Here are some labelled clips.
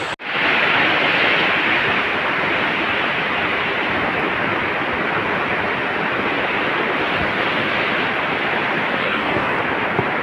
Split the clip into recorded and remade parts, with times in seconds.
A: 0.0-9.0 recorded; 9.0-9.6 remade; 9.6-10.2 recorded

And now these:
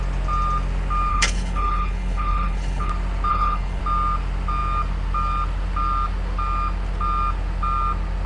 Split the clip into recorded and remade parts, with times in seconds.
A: 0.0-1.1 recorded; 1.1-2.9 remade; 2.9-3.3 recorded; 3.3-3.8 remade; 3.8-8.3 recorded

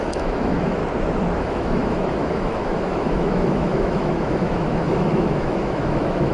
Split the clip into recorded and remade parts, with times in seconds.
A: 0.0-0.8 remade; 0.8-1.4 recorded; 1.4-6.3 remade